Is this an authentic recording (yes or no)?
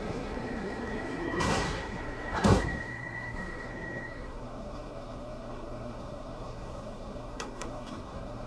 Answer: no